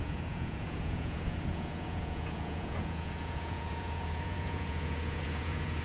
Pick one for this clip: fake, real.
fake